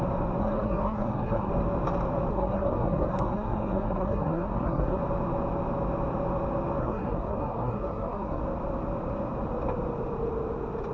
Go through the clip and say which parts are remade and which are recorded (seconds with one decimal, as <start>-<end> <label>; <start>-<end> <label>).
0.0-0.4 recorded; 0.4-1.5 remade; 1.5-2.3 recorded; 2.3-5.0 remade; 5.0-6.8 recorded; 6.8-8.4 remade; 8.4-10.9 recorded